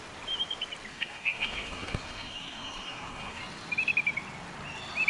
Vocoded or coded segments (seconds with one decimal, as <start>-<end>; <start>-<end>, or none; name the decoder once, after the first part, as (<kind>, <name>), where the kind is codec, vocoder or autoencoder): 0.9-3.4 (codec, SNAC)

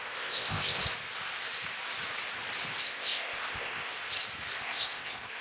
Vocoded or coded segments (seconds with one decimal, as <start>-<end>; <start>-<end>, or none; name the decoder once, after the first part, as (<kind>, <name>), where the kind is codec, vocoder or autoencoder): 0.0-0.8 (codec, ZipCodec); 2.8-3.9; 4.6-5.4

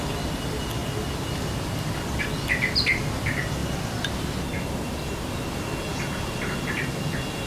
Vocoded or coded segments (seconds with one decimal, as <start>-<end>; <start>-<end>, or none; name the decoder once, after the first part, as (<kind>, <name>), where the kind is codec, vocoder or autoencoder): none